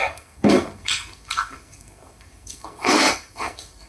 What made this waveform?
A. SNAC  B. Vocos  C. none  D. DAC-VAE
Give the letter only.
A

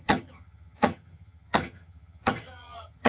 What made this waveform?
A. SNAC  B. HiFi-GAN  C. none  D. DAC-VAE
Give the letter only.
B